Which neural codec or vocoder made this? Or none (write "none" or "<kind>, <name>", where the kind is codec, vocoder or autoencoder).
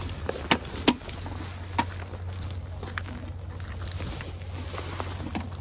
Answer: none